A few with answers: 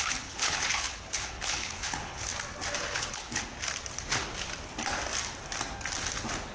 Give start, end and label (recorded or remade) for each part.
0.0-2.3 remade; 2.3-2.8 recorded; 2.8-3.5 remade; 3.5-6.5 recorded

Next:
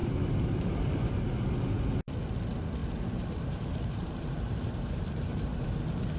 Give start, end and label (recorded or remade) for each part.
0.0-1.1 remade; 1.1-2.8 recorded; 2.8-5.6 remade; 5.6-6.2 recorded